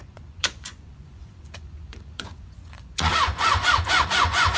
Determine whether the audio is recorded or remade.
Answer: remade